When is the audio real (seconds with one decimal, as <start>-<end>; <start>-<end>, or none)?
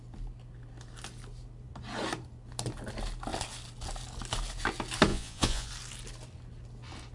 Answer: 0.0-5.1; 5.7-7.1